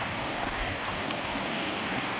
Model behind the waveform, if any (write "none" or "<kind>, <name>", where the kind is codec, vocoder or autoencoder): codec, DAC